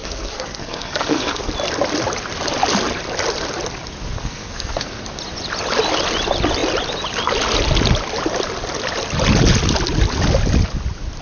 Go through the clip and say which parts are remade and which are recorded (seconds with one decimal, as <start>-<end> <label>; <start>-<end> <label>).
0.0-1.5 remade; 1.5-4.2 recorded; 4.2-5.0 remade; 5.0-11.2 recorded